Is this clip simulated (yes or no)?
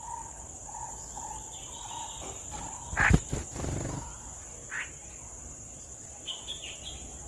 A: no